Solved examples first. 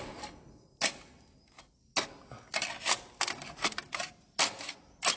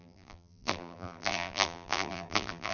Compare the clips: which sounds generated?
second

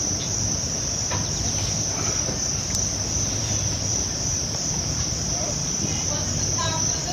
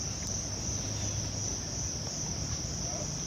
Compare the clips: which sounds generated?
first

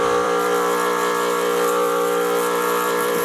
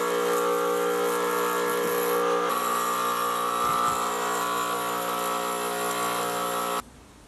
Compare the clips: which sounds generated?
first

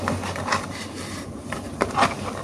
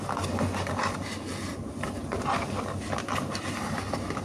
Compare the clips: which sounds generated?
first